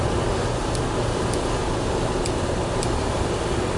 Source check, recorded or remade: recorded